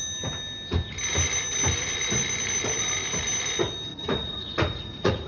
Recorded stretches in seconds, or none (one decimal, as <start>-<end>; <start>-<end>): 0.0-3.9